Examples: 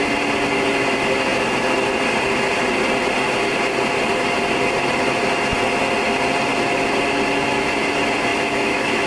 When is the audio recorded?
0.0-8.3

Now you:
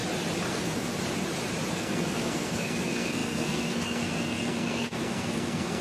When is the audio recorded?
0.0-0.5; 0.9-1.7

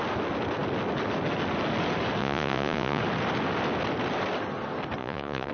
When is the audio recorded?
0.0-2.2; 3.0-5.0

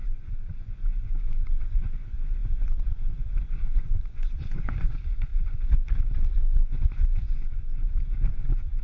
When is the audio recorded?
5.3-6.6; 7.8-8.3

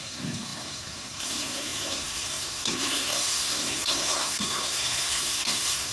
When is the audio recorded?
none

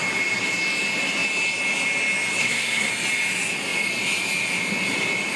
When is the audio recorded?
0.0-2.4; 2.9-5.4

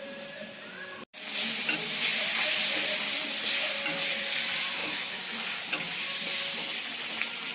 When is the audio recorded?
0.0-2.1; 2.7-7.5

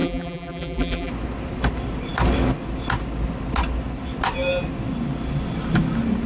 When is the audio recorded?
1.1-6.3